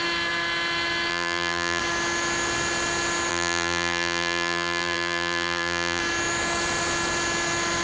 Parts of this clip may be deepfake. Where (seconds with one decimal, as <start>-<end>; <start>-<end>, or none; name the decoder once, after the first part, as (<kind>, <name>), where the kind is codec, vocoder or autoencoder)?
1.1-1.8 (vocoder, BigVGAN v2); 3.3-6.0